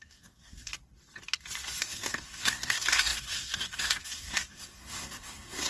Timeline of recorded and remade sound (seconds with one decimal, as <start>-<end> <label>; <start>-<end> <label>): 0.0-0.7 remade; 0.7-1.8 recorded; 1.8-5.7 remade